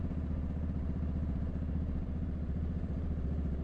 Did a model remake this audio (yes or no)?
yes